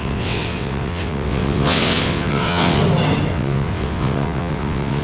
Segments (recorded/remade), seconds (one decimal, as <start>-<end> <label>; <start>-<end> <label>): 0.0-2.8 remade; 2.8-3.3 recorded; 3.3-5.0 remade